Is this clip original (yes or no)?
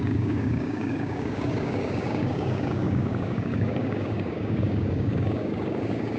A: no